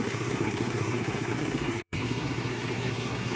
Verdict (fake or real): fake